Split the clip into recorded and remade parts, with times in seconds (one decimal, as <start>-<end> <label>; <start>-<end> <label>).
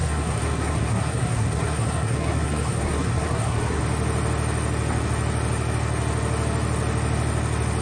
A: 0.0-3.8 remade; 3.8-7.8 recorded